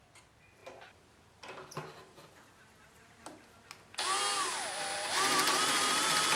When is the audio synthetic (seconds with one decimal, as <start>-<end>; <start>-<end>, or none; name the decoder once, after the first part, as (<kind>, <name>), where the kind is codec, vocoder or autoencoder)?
none